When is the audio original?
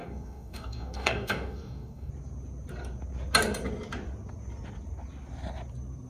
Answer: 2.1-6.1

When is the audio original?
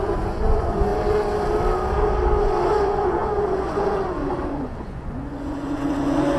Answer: 0.9-2.4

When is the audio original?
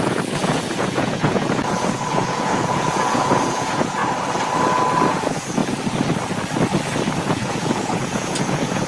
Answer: 4.0-5.1; 5.6-7.2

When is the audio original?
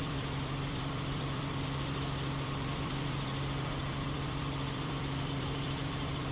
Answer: 3.3-3.8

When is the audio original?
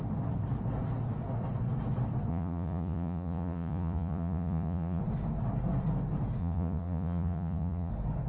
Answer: 0.0-2.3; 5.0-6.4; 7.9-8.3